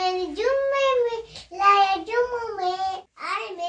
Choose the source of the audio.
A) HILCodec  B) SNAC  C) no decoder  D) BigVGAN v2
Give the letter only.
C